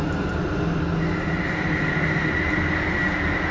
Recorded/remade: recorded